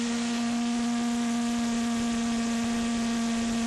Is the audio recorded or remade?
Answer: recorded